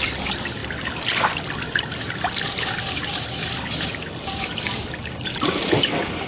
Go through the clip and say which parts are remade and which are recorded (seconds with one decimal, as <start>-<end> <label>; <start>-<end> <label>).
0.0-6.3 recorded